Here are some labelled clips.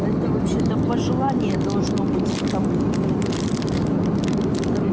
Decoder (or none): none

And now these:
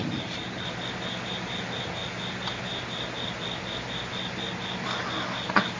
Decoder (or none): none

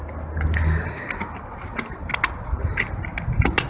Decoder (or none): none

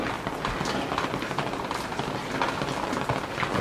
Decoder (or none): none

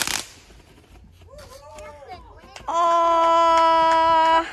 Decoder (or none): none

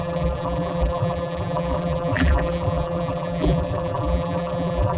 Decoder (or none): vocoder, BigVGAN v2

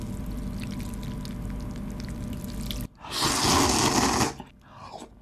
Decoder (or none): none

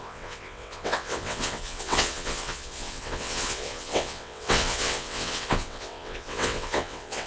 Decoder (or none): vocoder, WaveNeXt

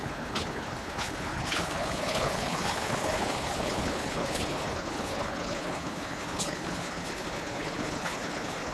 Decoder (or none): codec, HILCodec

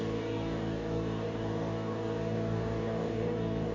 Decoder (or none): codec, DAC